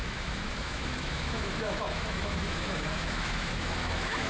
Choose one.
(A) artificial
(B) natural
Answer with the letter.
A